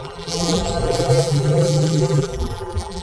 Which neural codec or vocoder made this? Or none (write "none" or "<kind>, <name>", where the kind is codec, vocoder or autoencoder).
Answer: vocoder, BigVGAN v2